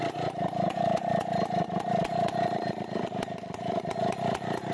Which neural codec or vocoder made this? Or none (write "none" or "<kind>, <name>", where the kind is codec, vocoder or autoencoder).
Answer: vocoder, BigVGAN v2